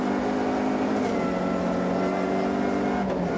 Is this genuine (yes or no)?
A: yes